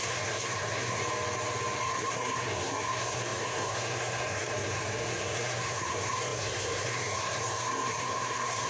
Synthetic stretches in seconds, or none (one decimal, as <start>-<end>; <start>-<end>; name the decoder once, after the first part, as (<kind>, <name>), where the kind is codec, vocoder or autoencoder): 0.0-1.0 (codec, SNAC); 1.8-8.7